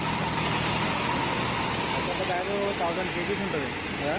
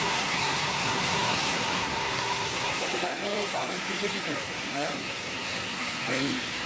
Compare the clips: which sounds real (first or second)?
first